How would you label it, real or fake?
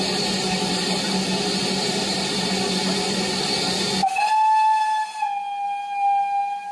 real